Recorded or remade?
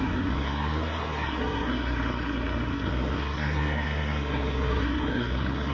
remade